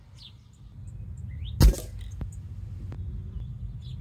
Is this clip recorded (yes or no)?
yes